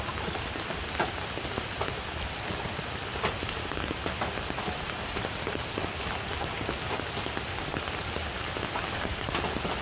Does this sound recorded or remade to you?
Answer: recorded